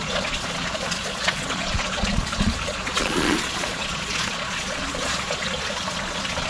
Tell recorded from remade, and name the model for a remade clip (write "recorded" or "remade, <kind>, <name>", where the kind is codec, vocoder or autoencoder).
remade, vocoder, Vocos